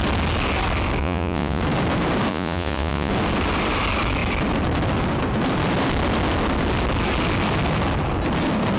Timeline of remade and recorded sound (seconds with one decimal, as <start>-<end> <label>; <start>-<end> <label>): 0.0-1.0 recorded; 1.0-1.6 remade; 1.6-2.3 recorded; 2.3-3.1 remade; 3.1-8.8 recorded